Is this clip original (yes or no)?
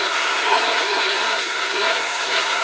no